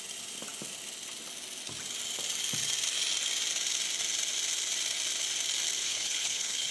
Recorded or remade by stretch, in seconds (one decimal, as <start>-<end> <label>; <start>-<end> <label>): 0.0-5.8 recorded; 5.8-6.7 remade